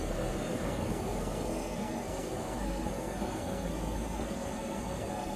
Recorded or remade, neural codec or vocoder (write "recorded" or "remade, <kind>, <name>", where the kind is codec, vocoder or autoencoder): remade, codec, SNAC